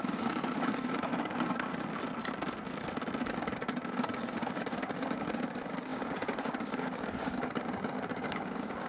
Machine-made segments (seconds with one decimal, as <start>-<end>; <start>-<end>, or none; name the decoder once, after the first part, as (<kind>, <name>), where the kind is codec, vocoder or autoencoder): 0.0-1.7 (codec, DAC); 3.2-8.9